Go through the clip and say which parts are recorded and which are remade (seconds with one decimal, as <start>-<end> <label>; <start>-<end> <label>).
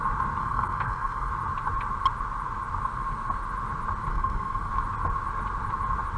0.0-0.4 recorded; 0.4-1.3 remade; 1.3-4.1 recorded; 4.1-4.7 remade; 4.7-6.2 recorded